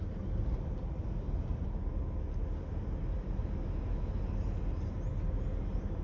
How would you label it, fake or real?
real